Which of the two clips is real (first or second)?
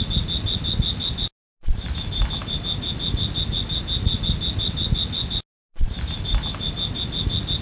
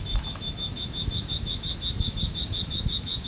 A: first